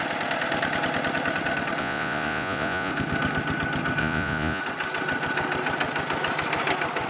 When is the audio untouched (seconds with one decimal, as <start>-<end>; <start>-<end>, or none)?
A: 0.0-1.8; 2.9-4.0; 4.6-7.1